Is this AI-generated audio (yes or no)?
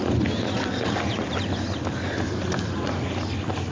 no